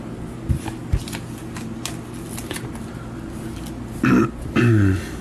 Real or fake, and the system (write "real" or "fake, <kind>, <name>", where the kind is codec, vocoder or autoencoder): real